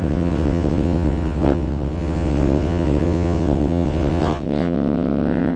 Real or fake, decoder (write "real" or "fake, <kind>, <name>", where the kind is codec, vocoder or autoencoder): fake, vocoder, WaveNeXt